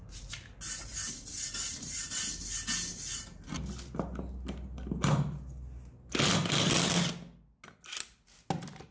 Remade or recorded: recorded